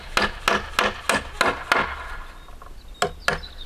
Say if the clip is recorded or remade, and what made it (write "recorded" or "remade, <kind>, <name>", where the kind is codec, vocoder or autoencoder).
recorded